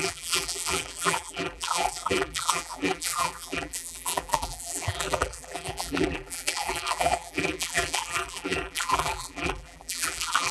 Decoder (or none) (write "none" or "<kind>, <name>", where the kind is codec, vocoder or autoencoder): vocoder, BigVGAN v2